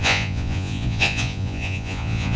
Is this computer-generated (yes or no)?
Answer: yes